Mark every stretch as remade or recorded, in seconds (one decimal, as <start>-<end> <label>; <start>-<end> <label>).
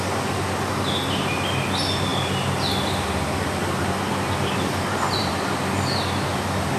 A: 0.0-3.6 recorded; 3.6-5.3 remade; 5.3-6.8 recorded